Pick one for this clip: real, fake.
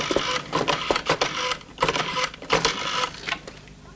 real